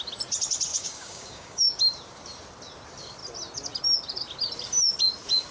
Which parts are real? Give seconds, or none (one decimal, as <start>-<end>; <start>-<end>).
0.0-0.7; 1.8-5.5